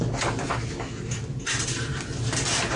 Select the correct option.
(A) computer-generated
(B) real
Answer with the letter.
B